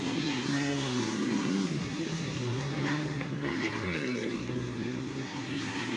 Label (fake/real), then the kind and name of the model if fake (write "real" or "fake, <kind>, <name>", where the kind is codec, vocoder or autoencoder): fake, codec, SNAC